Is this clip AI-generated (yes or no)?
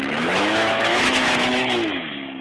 yes